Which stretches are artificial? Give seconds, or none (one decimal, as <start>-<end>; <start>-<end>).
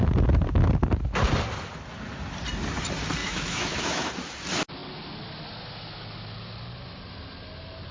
3.2-4.1